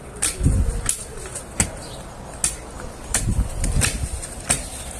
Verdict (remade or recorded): recorded